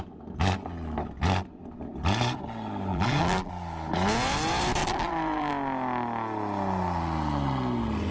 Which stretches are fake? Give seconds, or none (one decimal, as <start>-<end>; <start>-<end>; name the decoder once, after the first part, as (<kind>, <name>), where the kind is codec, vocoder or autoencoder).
2.9-3.5 (vocoder, BigVGAN v2); 4.8-5.5